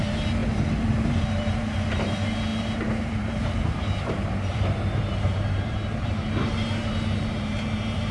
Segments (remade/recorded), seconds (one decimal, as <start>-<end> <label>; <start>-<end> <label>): 0.0-8.1 remade